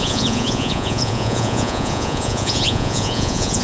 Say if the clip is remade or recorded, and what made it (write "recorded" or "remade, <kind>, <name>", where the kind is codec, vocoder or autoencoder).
remade, vocoder, Vocos